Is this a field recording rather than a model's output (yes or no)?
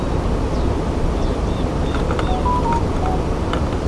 no